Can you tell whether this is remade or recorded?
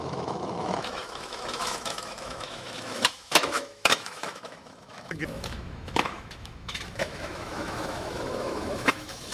remade